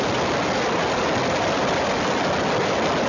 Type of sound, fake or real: real